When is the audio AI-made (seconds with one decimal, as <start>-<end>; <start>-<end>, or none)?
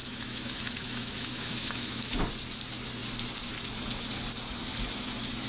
0.0-2.2